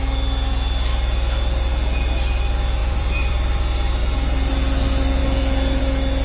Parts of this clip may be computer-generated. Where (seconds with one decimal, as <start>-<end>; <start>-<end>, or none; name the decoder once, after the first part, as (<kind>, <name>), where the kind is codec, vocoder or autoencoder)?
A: 2.8-3.6 (vocoder, BigVGAN v2); 4.0-4.5